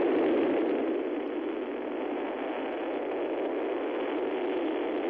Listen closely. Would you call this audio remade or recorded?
recorded